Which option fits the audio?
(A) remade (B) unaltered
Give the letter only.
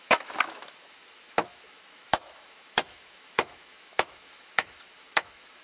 A